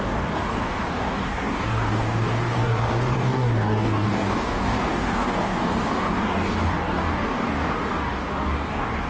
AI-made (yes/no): yes